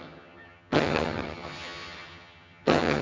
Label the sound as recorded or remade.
remade